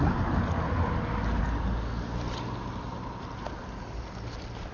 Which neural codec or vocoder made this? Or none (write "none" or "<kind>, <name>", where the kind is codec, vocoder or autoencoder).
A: none